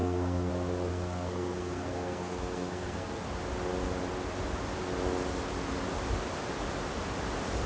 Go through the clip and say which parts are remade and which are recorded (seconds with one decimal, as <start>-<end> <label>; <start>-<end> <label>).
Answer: 0.0-0.5 remade; 0.5-0.9 recorded; 0.9-3.2 remade; 3.2-7.7 recorded